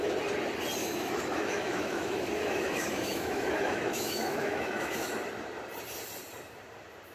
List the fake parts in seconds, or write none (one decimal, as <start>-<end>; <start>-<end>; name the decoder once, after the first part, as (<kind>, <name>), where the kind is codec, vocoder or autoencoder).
0.8-5.1 (autoencoder, DAC-VAE)